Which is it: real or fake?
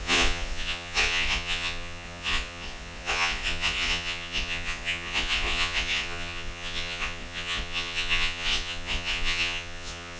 fake